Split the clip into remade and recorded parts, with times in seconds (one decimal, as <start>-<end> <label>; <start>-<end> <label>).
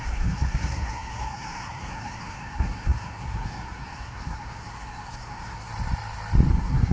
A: 0.0-5.7 remade; 5.7-6.5 recorded; 6.5-6.9 remade